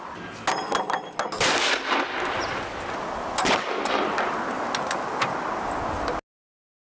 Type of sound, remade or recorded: recorded